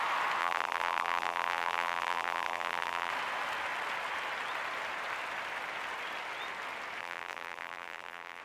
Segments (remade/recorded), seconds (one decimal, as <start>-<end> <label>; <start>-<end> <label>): 0.0-0.4 recorded; 0.4-3.1 remade; 3.1-7.0 recorded; 7.0-8.4 remade